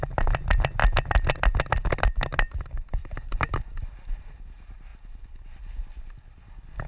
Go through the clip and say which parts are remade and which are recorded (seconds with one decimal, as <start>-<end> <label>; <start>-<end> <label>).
0.0-6.9 recorded